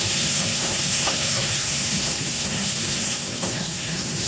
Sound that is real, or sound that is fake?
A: fake